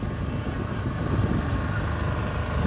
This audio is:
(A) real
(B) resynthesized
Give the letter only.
A